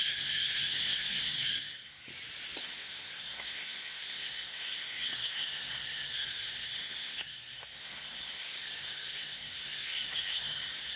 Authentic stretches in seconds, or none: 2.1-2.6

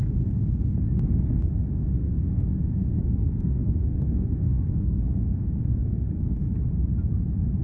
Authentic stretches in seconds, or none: 0.0-2.0; 6.4-7.6

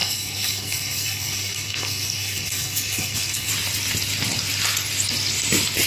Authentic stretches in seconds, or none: 3.5-5.9

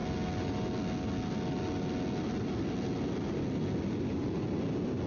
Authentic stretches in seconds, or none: 0.0-5.1